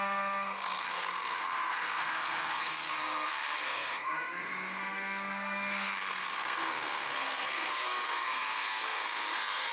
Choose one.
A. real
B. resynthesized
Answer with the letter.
B